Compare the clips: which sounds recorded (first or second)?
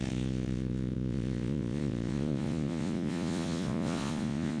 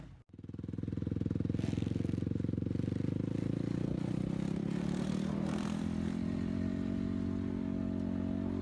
second